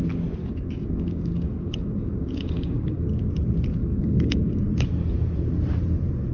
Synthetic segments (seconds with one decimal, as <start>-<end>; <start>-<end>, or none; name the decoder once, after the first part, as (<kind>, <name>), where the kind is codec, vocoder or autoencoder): 0.4-3.1 (codec, DAC); 3.8-4.6